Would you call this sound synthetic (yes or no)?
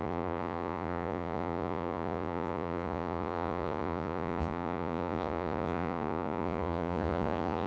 yes